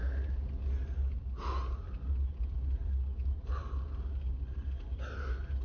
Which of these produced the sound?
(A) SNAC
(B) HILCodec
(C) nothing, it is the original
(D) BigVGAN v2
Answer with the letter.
C